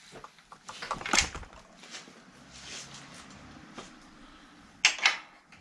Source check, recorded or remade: recorded